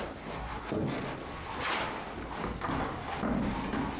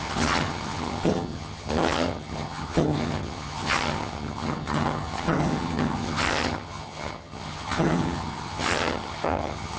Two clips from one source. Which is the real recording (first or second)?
first